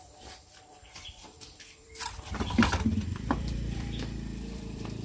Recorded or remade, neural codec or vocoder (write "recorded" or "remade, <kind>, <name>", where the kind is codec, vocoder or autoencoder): remade, vocoder, BigVGAN v2